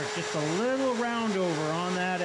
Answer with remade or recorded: recorded